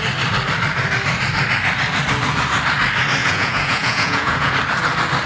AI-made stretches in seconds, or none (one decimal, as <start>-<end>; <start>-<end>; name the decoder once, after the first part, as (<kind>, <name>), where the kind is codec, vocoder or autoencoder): 3.2-4.5 (vocoder, Vocos)